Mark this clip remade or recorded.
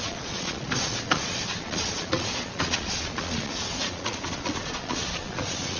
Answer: remade